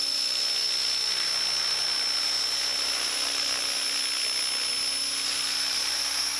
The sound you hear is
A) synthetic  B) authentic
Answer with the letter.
B